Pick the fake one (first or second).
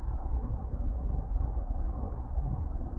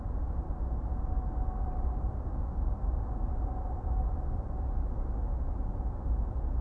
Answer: first